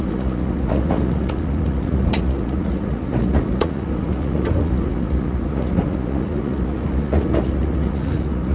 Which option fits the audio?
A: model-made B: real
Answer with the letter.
A